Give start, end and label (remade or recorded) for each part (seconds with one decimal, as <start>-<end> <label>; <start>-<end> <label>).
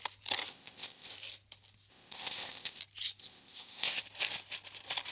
0.0-0.5 recorded; 0.5-1.1 remade; 1.1-1.9 recorded; 1.9-2.8 remade; 2.8-3.2 recorded; 3.2-4.0 remade; 4.0-5.1 recorded